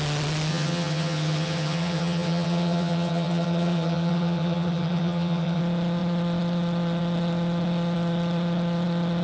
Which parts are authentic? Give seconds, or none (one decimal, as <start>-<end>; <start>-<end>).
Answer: 0.0-0.5; 5.6-9.2